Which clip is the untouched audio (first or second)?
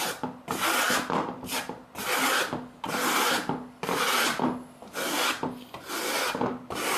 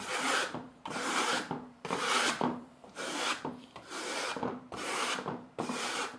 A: first